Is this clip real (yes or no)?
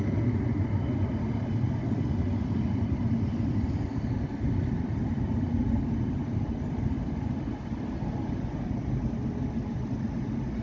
yes